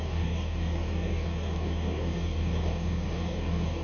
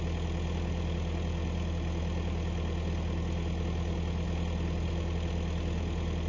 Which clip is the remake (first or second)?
first